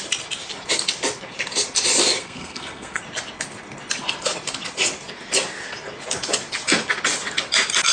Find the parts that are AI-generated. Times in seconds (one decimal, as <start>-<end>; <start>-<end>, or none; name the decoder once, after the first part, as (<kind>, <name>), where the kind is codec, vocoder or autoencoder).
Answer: 2.2-3.0 (codec, SNAC)